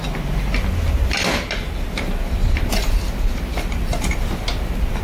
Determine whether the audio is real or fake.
real